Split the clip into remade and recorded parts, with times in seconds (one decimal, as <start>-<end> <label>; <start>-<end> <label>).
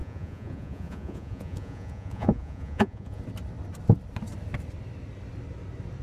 0.0-3.2 remade; 3.2-6.0 recorded